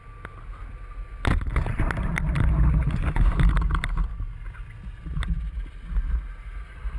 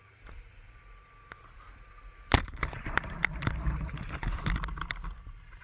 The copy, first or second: second